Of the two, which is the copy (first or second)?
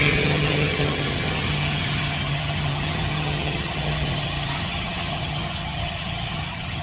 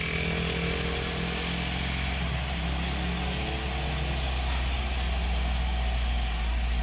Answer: first